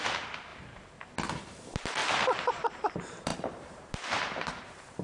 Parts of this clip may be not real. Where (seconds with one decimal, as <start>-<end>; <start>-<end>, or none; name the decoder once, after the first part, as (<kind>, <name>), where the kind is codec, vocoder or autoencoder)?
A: 0.0-0.5 (vocoder, BigVGAN v2); 1.3-5.0